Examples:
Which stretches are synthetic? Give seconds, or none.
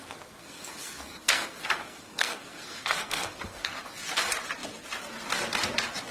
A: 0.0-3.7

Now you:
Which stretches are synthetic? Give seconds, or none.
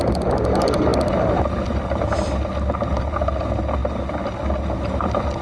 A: none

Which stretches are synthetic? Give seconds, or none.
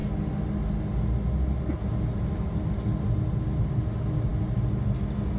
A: none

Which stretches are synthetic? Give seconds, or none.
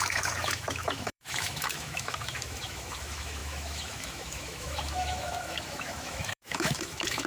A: 0.0-7.3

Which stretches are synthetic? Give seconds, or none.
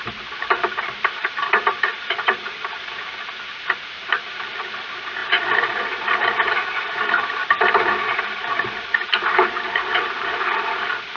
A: 0.0-11.2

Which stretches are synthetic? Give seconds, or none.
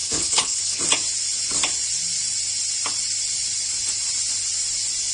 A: 0.0-0.8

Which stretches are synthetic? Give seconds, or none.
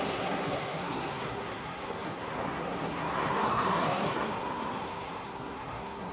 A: 0.0-6.1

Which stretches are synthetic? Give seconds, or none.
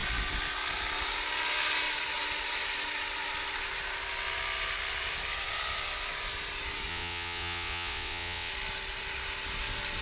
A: 6.9-8.5